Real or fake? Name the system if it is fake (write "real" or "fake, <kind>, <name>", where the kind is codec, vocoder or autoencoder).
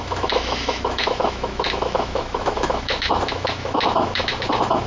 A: fake, autoencoder, DAC-VAE